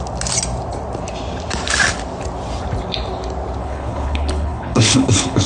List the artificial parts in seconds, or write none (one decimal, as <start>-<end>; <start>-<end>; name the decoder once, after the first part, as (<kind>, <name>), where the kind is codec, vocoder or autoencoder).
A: 3.6-5.5 (codec, HILCodec)